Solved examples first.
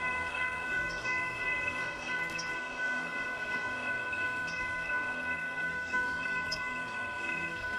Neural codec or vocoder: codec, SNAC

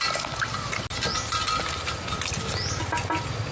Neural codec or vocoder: none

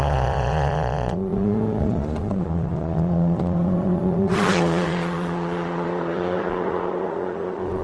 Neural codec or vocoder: vocoder, Vocos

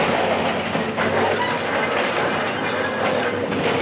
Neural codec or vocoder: none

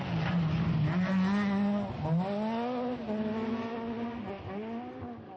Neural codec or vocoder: none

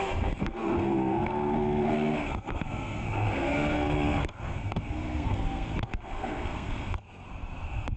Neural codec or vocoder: codec, SNAC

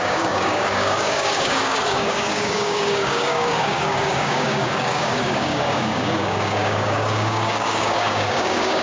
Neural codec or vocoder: codec, DAC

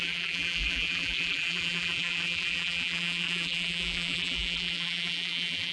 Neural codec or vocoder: vocoder, BigVGAN v2